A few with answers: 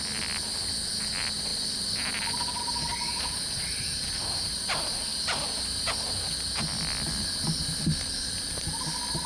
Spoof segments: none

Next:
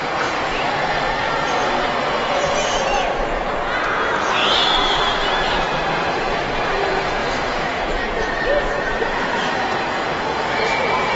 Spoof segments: 0.0-4.4 (vocoder, Vocos); 5.0-11.2

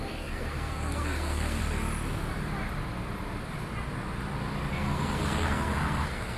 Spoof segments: 0.0-1.6 (codec, SNAC); 4.7-6.4

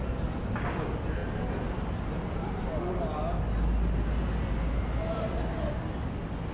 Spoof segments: none